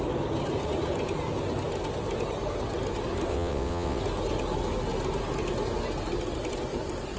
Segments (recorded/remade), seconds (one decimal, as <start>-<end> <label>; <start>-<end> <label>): 0.0-3.3 recorded; 3.3-4.0 remade; 4.0-7.2 recorded